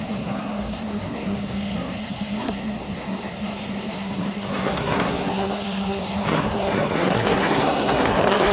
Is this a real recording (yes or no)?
no